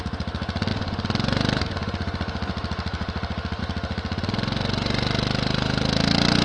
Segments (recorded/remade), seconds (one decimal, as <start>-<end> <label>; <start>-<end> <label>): 0.0-6.4 recorded